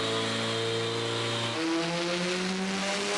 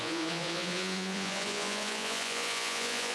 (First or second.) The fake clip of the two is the second